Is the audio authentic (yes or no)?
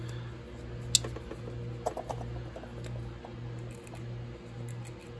yes